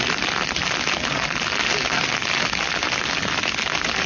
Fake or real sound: real